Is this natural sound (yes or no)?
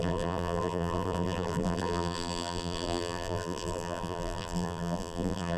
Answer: no